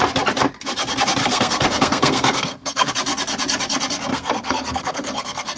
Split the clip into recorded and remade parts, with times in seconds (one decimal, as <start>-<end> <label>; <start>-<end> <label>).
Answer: 0.0-1.2 recorded; 1.2-2.9 remade; 2.9-4.1 recorded; 4.1-5.6 remade